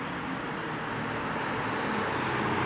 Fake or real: real